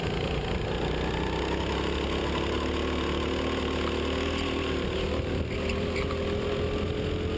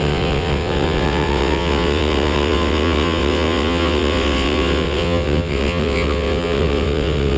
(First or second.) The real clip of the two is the first